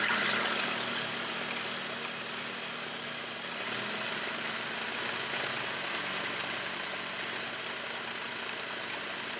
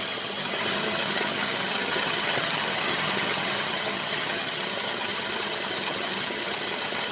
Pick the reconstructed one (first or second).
second